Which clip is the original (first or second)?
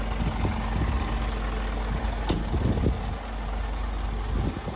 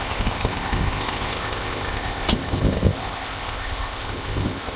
first